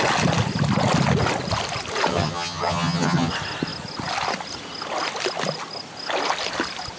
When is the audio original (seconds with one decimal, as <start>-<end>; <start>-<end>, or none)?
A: 0.0-2.1; 3.3-7.0